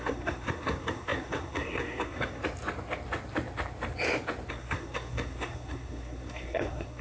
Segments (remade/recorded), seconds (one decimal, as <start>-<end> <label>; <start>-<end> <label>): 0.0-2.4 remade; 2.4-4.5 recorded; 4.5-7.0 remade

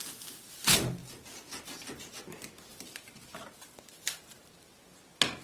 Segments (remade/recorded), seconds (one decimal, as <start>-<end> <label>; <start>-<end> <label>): 0.0-1.0 recorded; 1.0-2.2 remade; 2.2-2.7 recorded; 2.7-4.8 remade; 4.8-5.4 recorded

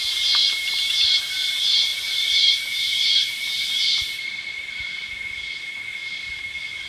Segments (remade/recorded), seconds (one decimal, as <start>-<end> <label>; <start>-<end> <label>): 0.0-0.4 recorded; 0.4-1.2 remade; 1.2-1.9 recorded; 1.9-4.7 remade; 4.7-6.0 recorded; 6.0-6.5 remade; 6.5-6.9 recorded

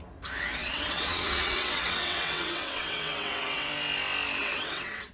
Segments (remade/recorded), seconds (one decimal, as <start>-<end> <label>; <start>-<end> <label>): 0.0-0.6 recorded; 0.6-3.7 remade; 3.7-4.4 recorded; 4.4-5.1 remade

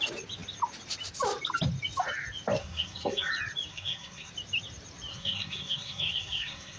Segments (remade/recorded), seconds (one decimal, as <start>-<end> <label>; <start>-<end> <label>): 0.0-2.6 recorded; 2.6-3.3 remade; 3.3-3.7 recorded; 3.7-4.3 remade; 4.3-5.1 recorded; 5.1-6.8 remade